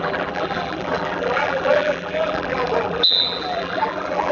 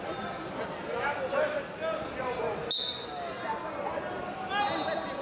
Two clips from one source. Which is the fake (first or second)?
first